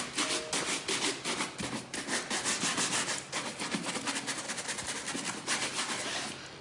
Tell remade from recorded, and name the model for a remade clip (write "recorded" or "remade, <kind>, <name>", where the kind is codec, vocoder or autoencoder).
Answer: recorded